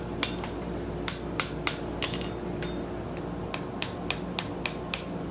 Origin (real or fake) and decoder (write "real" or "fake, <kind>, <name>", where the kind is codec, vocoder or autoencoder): real